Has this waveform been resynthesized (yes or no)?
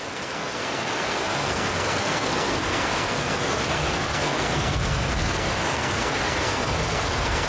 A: yes